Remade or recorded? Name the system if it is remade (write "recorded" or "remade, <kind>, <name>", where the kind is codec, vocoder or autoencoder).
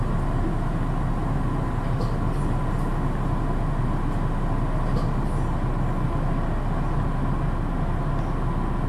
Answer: recorded